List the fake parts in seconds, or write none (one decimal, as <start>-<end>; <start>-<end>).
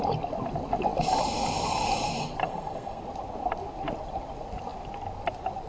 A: 2.4-3.0